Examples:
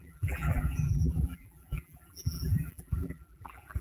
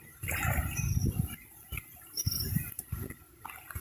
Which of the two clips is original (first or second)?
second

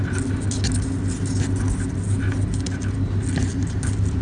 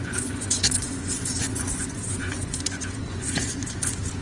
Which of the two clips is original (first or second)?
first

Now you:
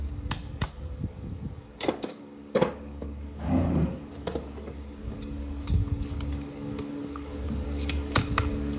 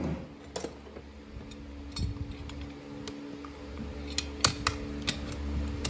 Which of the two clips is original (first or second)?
second